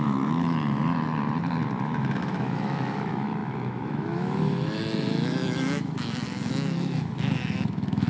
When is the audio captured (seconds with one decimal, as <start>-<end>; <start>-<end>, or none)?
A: 0.8-2.0